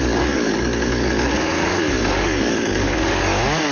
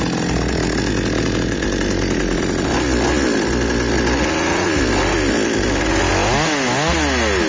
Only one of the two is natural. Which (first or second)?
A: second